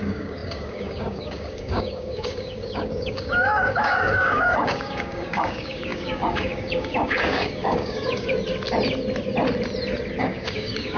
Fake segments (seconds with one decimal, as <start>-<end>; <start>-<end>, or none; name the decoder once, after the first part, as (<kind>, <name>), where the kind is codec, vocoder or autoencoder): 0.0-8.3 (codec, DAC); 10.2-11.0